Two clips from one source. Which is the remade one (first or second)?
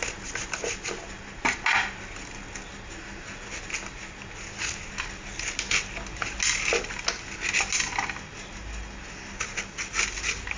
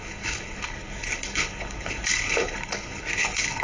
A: second